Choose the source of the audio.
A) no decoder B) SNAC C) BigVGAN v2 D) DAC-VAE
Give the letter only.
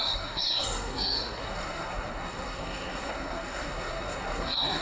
B